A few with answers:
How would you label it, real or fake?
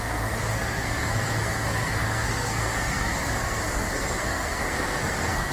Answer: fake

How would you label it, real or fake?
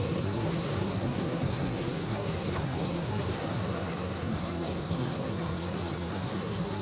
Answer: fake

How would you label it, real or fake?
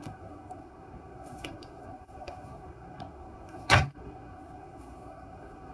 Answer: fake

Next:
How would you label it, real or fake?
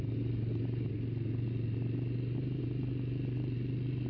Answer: real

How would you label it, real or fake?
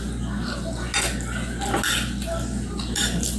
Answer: real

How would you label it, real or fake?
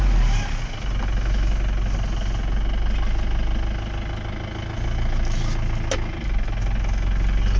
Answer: real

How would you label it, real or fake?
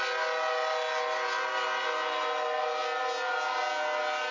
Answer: real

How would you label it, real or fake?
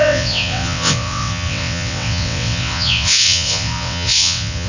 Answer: fake